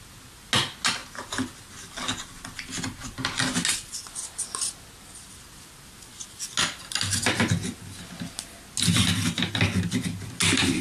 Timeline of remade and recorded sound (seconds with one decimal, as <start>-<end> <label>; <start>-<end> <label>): 0.0-10.8 recorded